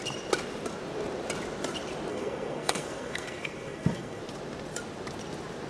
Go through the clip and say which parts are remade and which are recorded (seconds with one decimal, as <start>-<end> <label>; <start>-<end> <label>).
0.0-2.1 recorded; 2.1-4.2 remade; 4.2-5.7 recorded